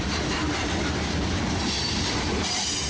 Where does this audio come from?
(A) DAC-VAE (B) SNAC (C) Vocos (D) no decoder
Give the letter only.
D